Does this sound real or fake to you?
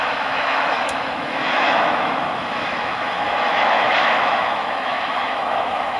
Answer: fake